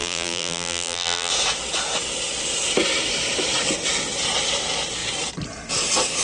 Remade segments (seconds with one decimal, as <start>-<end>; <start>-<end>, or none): 0.0-1.3